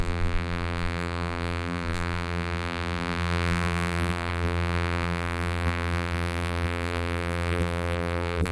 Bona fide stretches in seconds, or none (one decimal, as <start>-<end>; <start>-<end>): none